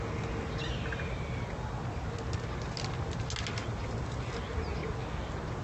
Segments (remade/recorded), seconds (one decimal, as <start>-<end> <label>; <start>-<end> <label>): 0.0-5.6 recorded